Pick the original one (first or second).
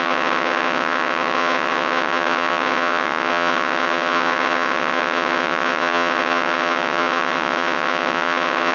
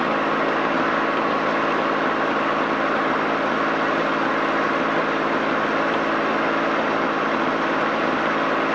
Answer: second